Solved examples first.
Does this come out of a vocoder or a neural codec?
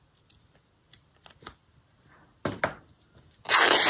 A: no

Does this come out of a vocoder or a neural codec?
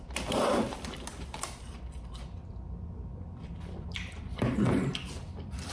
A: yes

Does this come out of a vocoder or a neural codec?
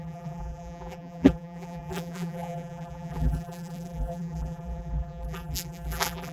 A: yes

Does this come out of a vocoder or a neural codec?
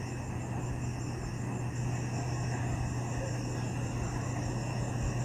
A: no